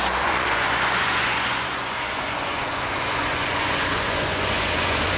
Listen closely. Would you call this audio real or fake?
fake